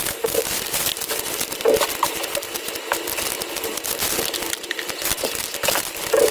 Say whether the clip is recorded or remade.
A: recorded